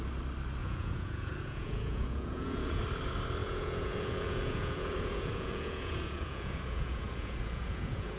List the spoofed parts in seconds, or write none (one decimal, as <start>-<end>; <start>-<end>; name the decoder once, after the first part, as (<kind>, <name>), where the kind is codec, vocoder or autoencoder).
0.6-2.8 (vocoder, Vocos); 3.4-8.2

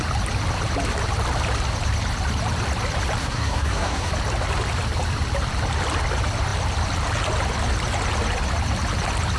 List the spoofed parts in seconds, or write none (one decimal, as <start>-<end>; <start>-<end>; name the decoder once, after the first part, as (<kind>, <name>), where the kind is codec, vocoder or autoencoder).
3.2-4.1 (codec, SNAC)

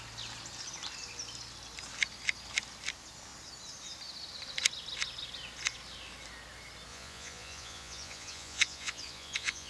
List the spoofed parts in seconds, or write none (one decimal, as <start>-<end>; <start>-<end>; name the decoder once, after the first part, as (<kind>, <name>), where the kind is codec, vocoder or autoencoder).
6.9-9.7 (vocoder, Vocos)

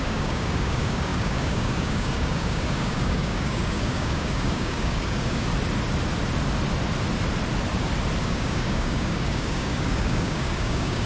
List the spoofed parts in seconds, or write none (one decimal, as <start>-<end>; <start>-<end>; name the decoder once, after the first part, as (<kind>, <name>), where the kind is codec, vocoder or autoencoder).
0.0-5.5 (codec, DAC); 8.2-11.1

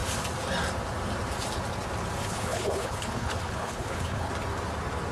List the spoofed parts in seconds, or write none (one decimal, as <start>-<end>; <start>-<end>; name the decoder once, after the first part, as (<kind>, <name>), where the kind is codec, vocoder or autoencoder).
2.2-4.3 (codec, HILCodec)